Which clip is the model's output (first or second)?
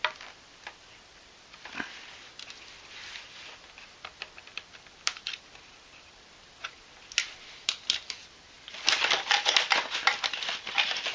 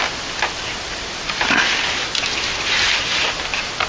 first